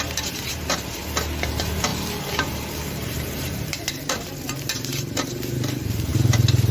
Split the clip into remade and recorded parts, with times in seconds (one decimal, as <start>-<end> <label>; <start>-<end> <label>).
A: 0.0-1.0 remade; 1.0-1.5 recorded; 1.5-6.7 remade